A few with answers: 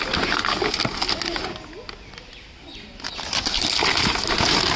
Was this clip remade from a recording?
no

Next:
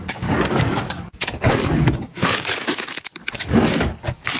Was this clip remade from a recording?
yes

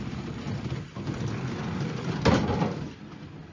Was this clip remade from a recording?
no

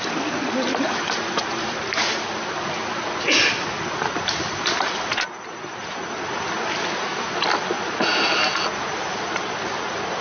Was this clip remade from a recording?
no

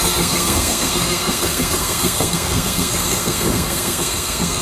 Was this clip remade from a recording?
yes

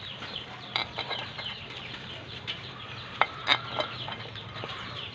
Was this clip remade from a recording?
yes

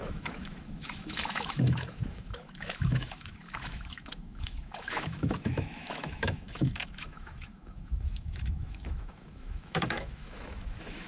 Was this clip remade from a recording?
yes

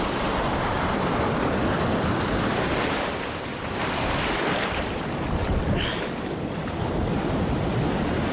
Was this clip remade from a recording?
yes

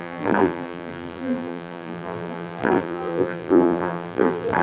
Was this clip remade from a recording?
yes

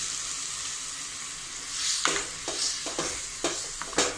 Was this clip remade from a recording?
no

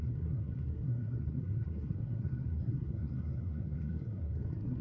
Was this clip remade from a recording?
yes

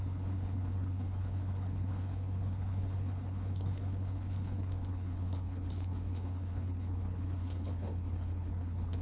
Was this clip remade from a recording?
yes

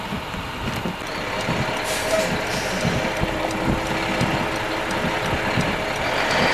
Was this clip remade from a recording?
no